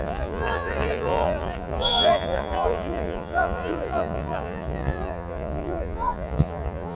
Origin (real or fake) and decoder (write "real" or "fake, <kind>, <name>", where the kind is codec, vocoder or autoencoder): fake, vocoder, Vocos